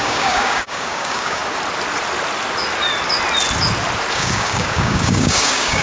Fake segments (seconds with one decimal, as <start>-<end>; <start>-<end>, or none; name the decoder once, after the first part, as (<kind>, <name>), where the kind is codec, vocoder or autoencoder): 0.0-1.4 (codec, DAC); 4.1-5.8